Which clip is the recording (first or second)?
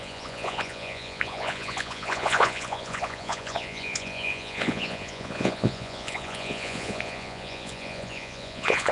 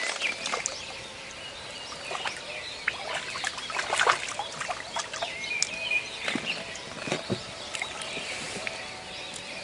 second